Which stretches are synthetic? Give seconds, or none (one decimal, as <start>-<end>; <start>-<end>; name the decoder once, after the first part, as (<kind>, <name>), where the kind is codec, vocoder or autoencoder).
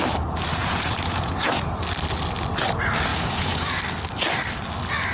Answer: 0.6-1.5 (vocoder, Vocos); 3.1-3.8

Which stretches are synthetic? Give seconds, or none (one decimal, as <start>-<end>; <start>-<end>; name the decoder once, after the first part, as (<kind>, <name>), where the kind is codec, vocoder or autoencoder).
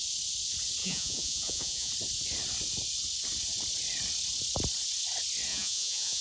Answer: 0.8-1.9 (vocoder, Vocos); 5.5-6.2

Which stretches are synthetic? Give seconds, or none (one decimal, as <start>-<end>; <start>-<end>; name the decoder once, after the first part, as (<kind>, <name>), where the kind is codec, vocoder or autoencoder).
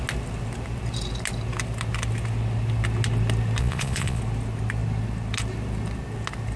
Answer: 3.6-4.2 (vocoder, Vocos)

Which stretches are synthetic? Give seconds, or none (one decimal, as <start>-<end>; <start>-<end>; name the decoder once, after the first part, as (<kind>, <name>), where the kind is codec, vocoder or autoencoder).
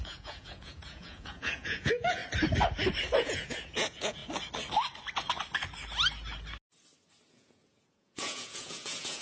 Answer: 0.0-2.2 (vocoder, Vocos); 3.2-4.2; 7.3-9.2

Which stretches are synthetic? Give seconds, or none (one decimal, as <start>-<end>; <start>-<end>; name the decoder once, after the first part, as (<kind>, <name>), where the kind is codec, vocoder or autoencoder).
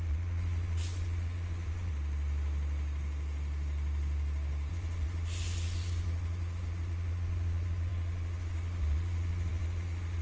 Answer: 0.0-1.9 (vocoder, Vocos); 4.7-10.2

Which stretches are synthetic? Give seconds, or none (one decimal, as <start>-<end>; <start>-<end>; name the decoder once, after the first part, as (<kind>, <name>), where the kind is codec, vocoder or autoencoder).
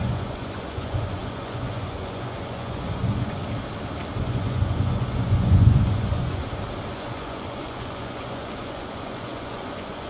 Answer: 0.0-3.4 (vocoder, Vocos); 4.2-6.4; 6.9-10.1